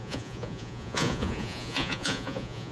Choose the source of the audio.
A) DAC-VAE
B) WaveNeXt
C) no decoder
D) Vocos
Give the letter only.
D